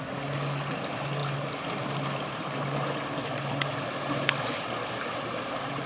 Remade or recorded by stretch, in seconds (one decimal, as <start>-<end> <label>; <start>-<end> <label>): 0.0-5.9 recorded